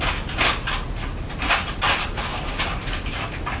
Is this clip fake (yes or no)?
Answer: no